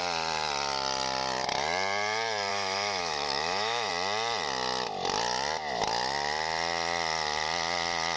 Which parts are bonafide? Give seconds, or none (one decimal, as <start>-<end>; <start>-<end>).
0.0-2.5; 3.9-8.2